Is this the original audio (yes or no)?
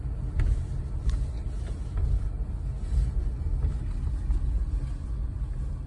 yes